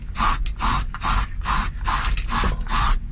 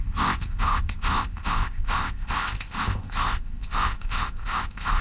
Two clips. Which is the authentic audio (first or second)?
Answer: first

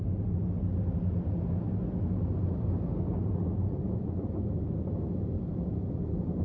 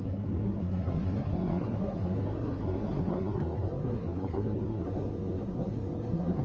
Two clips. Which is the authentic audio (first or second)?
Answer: first